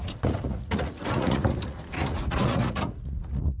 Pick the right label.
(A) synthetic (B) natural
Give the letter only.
A